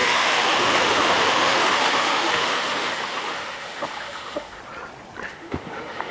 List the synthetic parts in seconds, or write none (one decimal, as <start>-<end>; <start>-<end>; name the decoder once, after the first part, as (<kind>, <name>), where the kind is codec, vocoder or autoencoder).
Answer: 0.0-4.6 (autoencoder, DAC-VAE); 5.3-6.1